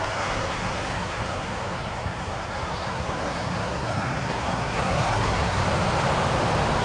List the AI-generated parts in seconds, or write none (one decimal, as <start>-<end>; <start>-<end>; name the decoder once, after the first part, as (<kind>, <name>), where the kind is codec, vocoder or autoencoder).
0.0-5.6 (codec, SNAC)